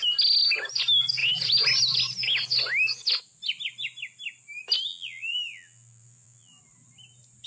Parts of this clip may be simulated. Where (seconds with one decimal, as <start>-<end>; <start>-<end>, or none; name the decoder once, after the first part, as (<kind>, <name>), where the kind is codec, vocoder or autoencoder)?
4.9-6.6 (vocoder, BigVGAN v2)